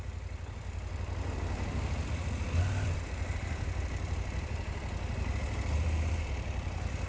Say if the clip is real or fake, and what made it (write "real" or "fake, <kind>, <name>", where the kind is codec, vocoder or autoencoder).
fake, vocoder, BigVGAN v2